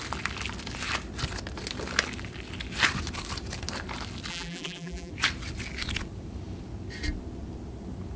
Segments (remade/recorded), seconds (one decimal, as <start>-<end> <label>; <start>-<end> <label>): 0.0-4.3 recorded; 4.3-5.1 remade; 5.1-8.2 recorded